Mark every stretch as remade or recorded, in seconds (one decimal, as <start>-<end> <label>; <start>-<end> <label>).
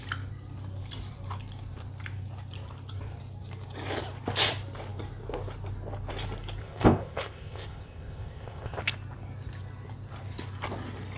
0.0-6.6 recorded; 6.6-8.8 remade; 8.8-11.2 recorded